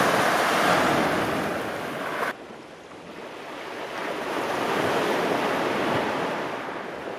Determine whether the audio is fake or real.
real